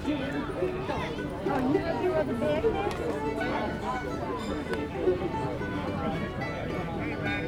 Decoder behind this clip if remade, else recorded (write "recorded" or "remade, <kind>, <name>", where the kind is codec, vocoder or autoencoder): recorded